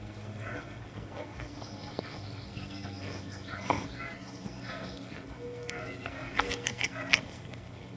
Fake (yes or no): yes